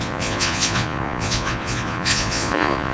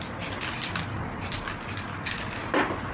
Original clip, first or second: second